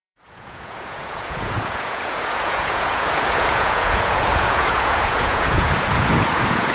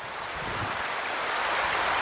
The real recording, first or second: second